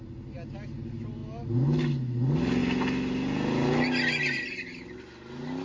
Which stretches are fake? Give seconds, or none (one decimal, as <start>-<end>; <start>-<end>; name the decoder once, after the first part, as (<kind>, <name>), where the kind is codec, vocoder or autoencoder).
none